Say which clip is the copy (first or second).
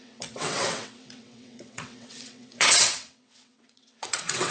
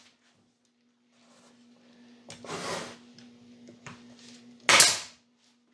first